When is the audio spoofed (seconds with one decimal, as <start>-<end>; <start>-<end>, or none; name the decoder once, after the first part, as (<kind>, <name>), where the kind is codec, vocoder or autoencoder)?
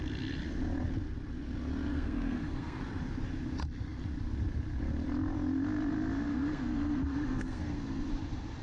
1.9-3.0 (codec, SNAC); 6.3-8.1